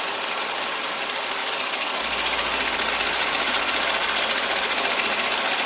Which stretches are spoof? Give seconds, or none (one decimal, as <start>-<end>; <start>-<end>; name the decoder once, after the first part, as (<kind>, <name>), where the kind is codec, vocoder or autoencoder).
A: 1.4-2.0 (codec, DAC)